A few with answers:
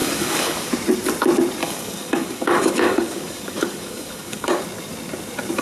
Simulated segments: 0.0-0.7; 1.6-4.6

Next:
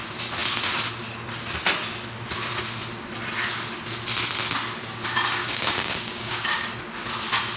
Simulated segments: 5.4-6.7

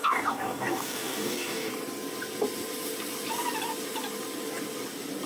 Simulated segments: 0.0-1.7

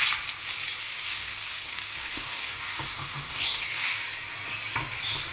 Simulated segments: 0.8-4.0

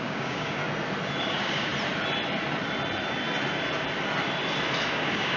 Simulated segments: 0.0-0.6; 1.2-1.7; 4.9-5.4